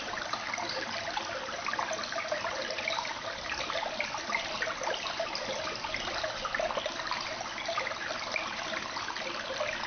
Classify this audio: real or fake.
real